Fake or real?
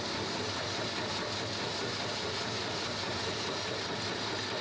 real